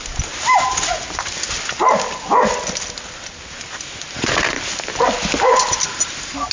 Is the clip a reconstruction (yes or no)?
no